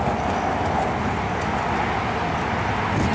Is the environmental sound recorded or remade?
recorded